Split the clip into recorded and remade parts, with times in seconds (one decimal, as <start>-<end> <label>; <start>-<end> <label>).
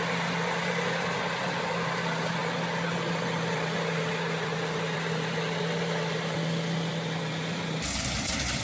0.0-8.6 recorded